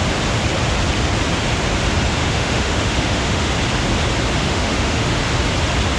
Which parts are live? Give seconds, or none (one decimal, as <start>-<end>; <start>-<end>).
0.0-2.2; 3.5-4.4; 5.2-6.0